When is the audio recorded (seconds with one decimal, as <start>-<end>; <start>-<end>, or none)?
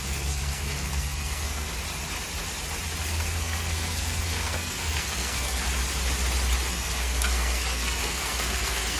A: 1.7-3.0; 5.6-6.7